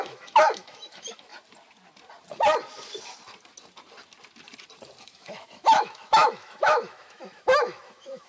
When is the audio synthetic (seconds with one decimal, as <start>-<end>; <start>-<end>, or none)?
0.0-1.3; 5.0-8.3